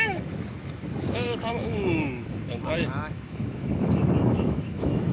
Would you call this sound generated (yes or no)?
yes